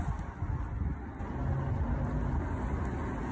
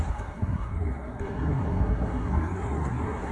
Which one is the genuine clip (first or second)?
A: first